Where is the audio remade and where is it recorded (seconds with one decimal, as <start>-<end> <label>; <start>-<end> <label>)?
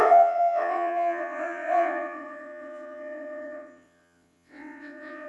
0.0-5.3 remade